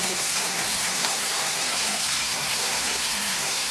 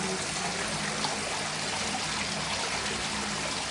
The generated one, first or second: first